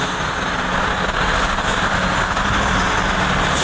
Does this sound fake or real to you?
real